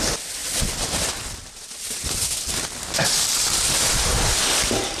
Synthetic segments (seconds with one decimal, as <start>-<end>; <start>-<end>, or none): none